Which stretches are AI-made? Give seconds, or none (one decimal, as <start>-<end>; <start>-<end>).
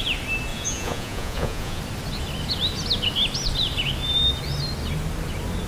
0.5-1.8